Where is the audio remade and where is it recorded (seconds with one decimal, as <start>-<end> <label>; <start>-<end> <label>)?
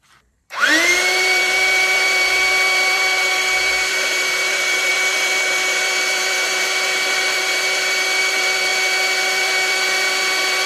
0.0-10.7 remade